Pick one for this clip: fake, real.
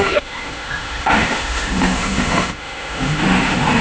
fake